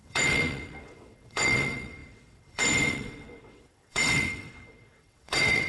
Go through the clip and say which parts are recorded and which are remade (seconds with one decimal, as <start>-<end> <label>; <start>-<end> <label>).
0.0-5.7 remade